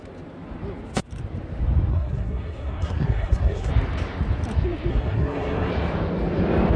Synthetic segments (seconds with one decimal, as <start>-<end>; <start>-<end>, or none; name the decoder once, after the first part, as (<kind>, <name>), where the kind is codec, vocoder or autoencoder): 1.9-3.7 (codec, SNAC); 4.9-5.7